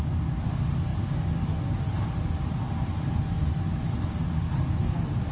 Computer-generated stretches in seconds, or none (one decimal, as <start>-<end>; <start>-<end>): none